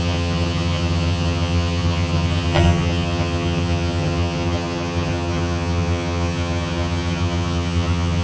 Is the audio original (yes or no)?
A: no